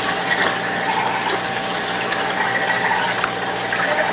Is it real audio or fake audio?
real